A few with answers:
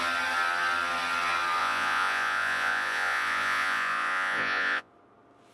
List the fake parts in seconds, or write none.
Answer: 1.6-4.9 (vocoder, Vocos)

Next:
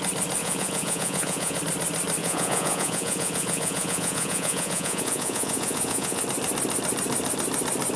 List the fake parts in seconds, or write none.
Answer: 0.4-1.6 (vocoder, Vocos); 2.2-6.2

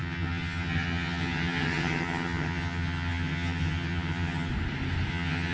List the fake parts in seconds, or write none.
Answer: 0.0-4.5 (vocoder, HiFi-GAN); 5.1-5.5

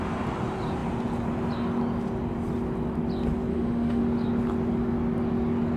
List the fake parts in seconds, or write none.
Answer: 3.5-4.0 (autoencoder, DAC-VAE)

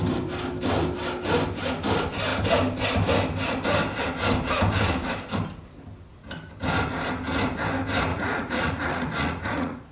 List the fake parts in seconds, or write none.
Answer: 8.1-9.9 (vocoder, Vocos)

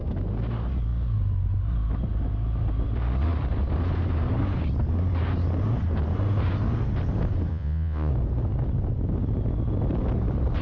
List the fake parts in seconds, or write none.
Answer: 7.5-8.1 (vocoder, Vocos)

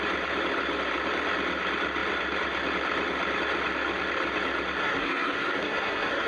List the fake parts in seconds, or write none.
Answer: 4.8-6.3 (codec, SNAC)

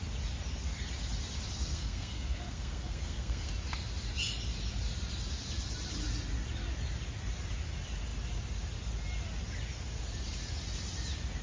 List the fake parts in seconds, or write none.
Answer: 1.7-3.5 (codec, SNAC)